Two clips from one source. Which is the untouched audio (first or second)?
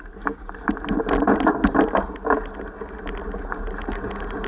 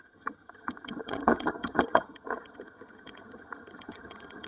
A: first